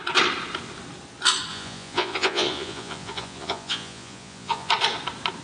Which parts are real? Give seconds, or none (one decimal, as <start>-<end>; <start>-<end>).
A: 0.0-1.5; 4.7-5.4

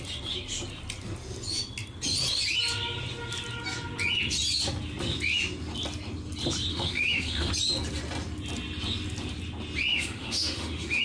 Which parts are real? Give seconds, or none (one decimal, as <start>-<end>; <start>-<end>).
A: 0.0-6.7; 7.5-9.9

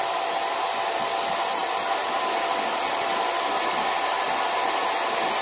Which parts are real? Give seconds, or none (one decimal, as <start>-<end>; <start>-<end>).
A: 0.0-5.4

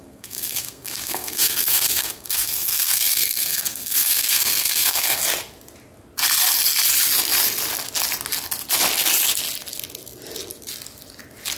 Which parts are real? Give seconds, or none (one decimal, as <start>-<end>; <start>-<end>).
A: 5.2-11.6

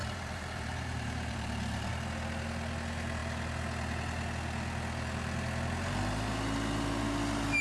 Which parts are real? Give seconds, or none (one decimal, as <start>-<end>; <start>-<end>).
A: 1.9-7.6

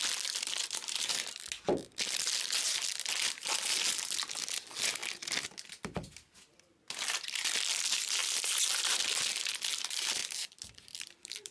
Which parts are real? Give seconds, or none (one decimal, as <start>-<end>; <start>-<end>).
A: 0.0-10.2

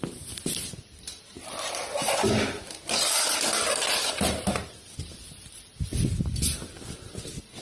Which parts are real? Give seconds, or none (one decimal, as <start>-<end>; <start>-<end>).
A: 0.0-7.6

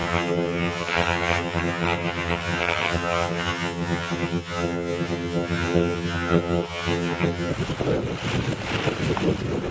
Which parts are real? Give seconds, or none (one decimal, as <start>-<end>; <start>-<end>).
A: 7.5-9.7